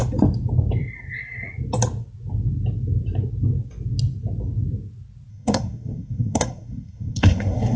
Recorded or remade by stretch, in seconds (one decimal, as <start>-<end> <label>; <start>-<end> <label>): 0.0-5.3 recorded; 5.3-7.8 remade